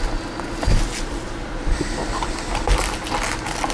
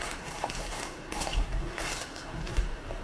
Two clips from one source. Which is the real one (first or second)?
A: first